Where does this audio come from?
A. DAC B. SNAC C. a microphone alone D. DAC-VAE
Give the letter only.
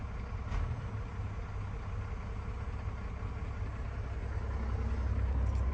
C